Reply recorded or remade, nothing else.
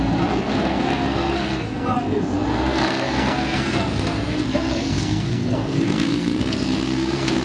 remade